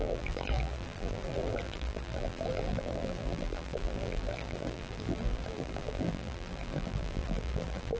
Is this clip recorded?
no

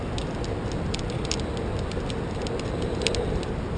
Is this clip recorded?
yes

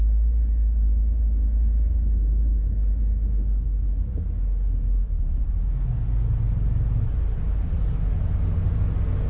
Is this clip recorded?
yes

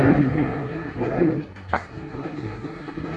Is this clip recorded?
no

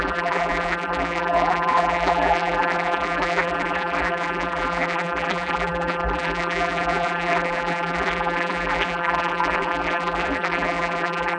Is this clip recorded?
no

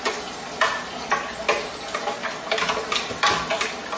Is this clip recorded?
yes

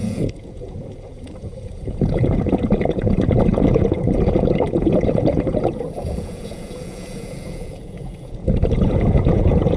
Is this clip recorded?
no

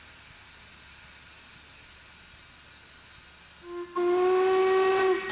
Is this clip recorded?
yes